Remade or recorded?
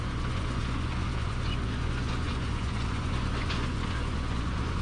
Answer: remade